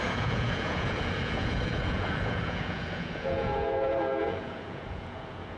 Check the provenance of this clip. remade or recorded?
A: remade